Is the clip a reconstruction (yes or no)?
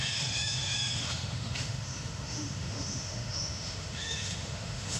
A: yes